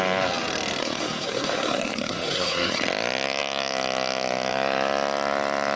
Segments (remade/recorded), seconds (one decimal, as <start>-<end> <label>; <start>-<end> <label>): 0.0-0.8 recorded; 0.8-2.8 remade; 2.8-5.8 recorded